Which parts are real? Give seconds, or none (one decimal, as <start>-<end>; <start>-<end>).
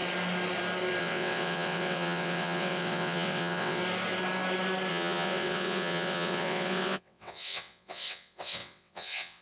0.0-1.0; 3.8-4.9